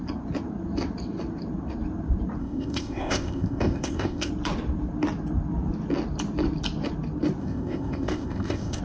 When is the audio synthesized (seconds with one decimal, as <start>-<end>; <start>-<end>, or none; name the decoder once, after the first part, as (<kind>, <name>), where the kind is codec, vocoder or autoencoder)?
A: 2.4-4.3 (codec, ZipCodec); 7.4-8.8